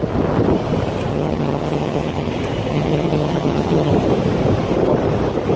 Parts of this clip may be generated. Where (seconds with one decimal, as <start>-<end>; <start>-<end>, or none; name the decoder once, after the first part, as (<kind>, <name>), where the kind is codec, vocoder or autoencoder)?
1.1-2.3 (vocoder, HiFi-GAN); 2.7-3.9